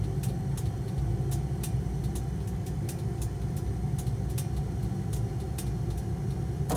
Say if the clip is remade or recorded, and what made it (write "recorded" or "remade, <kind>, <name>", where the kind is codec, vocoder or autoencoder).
recorded